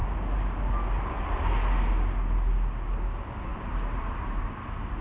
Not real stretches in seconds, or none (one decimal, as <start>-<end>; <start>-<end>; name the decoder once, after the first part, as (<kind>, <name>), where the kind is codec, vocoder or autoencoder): 3.5-4.4 (vocoder, BigVGAN v2)